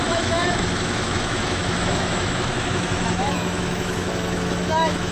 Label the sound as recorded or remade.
remade